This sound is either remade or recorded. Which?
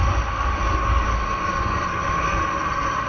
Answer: recorded